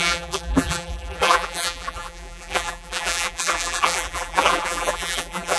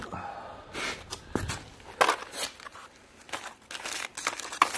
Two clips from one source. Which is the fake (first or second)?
first